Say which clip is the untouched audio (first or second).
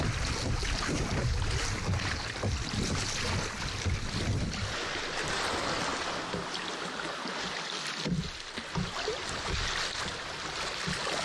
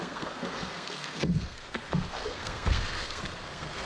first